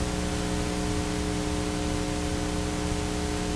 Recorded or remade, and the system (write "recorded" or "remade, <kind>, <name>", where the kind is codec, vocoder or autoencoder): recorded